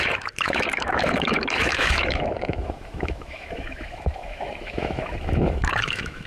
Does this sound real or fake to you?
fake